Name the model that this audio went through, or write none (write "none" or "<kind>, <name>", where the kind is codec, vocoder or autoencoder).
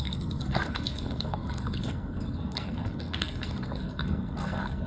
codec, SNAC